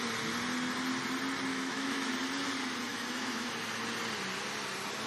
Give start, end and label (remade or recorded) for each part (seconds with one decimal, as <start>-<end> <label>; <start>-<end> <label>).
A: 0.0-1.5 recorded; 1.5-2.1 remade; 2.1-2.9 recorded; 2.9-3.5 remade; 3.5-5.1 recorded